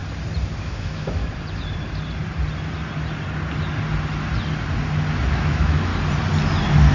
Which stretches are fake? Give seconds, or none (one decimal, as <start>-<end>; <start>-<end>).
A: 0.6-1.2; 5.3-5.9